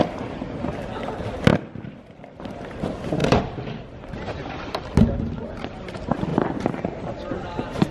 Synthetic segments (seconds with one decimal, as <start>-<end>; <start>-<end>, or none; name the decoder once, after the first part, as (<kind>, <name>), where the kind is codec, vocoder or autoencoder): 3.2-4.0 (vocoder, BigVGAN v2); 6.3-7.9